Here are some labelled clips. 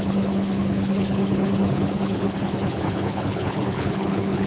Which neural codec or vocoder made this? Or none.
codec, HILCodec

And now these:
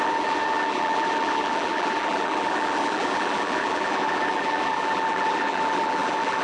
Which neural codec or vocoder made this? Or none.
vocoder, BigVGAN v2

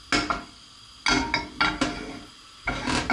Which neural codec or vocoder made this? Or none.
none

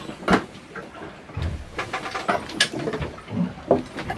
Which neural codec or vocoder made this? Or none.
none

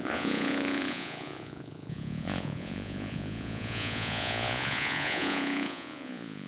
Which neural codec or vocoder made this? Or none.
vocoder, Vocos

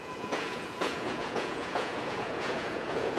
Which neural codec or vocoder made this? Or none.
vocoder, Vocos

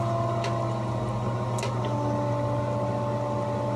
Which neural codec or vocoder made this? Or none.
none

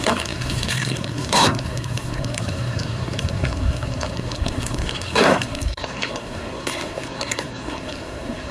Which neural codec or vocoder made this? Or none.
codec, SNAC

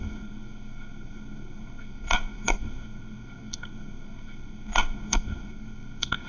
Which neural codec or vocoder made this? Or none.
codec, SNAC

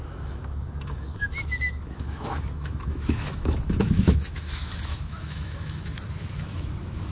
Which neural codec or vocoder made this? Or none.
autoencoder, DAC-VAE